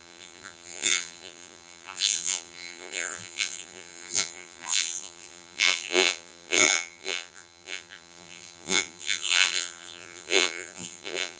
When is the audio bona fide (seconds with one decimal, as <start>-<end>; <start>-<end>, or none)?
none